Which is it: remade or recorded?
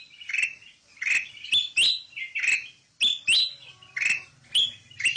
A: recorded